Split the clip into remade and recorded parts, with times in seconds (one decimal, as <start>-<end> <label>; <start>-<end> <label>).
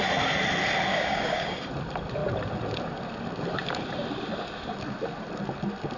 0.0-0.9 recorded; 0.9-1.7 remade; 1.7-6.0 recorded